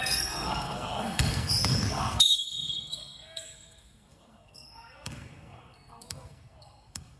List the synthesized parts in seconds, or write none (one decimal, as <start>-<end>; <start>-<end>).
0.0-7.2